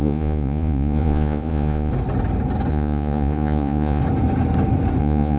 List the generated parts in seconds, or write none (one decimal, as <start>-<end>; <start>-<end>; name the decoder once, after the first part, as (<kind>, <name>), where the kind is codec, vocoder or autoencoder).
0.0-1.9 (vocoder, Vocos); 2.7-4.0; 5.0-5.4